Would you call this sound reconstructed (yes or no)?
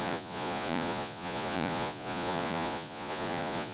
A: yes